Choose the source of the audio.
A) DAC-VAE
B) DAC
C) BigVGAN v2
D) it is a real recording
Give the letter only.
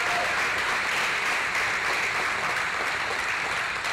D